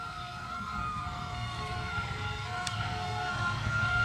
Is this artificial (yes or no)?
yes